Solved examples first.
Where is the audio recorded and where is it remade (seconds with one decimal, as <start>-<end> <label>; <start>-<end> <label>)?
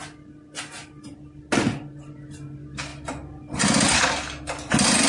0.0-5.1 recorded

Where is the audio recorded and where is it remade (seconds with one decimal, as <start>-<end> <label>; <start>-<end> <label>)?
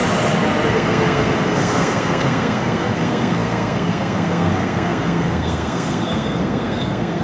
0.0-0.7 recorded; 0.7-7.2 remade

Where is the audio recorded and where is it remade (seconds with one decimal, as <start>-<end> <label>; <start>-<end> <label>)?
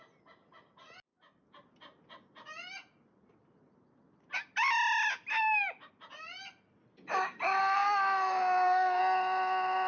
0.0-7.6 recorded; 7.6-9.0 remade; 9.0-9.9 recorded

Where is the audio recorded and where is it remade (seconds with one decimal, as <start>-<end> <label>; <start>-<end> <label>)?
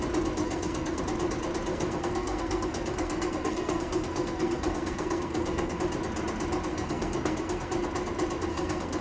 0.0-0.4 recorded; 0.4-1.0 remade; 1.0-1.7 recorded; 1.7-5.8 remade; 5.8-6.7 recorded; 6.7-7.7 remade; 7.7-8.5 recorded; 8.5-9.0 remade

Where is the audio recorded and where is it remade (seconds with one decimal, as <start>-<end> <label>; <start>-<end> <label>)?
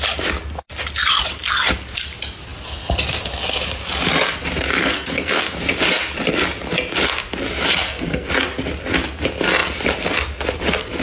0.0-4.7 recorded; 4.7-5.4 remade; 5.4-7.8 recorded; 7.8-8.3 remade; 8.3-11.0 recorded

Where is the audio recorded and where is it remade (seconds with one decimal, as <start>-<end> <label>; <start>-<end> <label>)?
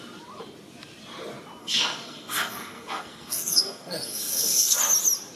0.0-1.6 recorded; 1.6-4.8 remade; 4.8-5.4 recorded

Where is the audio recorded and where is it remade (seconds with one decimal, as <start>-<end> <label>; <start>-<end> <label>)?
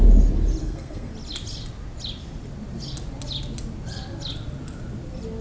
0.0-0.6 recorded; 0.6-1.1 remade; 1.1-5.4 recorded